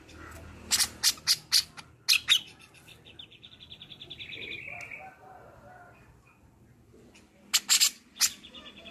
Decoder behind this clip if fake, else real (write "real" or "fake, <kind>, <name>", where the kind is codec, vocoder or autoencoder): real